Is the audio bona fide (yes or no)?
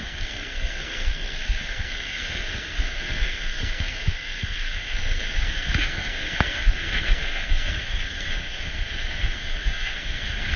no